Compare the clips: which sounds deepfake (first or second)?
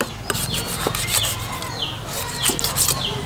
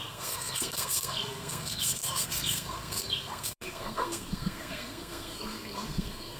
second